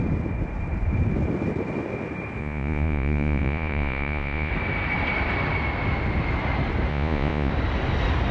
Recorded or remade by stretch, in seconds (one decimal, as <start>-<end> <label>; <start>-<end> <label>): 0.0-2.4 recorded; 2.4-4.5 remade; 4.5-6.9 recorded; 6.9-7.5 remade; 7.5-8.3 recorded